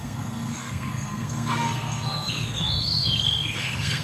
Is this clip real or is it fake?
fake